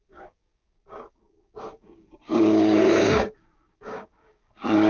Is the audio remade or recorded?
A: remade